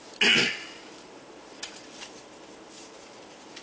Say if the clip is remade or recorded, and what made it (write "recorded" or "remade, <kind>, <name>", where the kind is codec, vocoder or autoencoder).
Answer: recorded